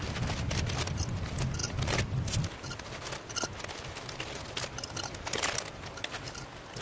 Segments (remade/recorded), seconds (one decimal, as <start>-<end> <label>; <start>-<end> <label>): 0.0-6.8 recorded